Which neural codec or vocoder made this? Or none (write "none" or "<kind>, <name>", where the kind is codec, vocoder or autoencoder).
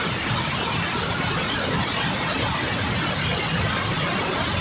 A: none